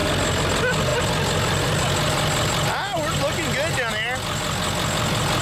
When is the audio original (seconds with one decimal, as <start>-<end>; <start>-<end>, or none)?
0.5-5.4